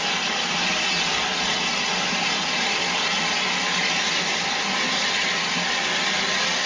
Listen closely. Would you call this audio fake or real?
real